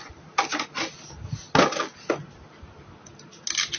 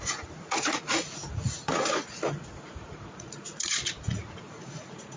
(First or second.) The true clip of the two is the first